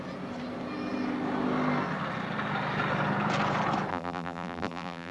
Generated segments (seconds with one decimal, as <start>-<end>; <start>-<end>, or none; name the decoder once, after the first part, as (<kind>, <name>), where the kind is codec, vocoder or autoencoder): 3.9-5.1 (vocoder, BigVGAN v2)